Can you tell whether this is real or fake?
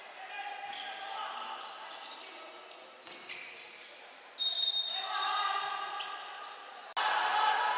real